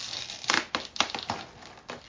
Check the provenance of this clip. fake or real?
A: real